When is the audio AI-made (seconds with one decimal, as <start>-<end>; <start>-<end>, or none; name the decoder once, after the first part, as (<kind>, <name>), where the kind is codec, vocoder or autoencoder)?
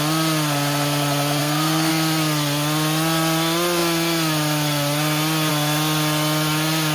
1.4-1.9 (codec, SNAC)